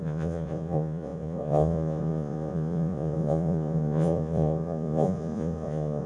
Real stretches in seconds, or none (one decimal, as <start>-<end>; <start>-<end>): none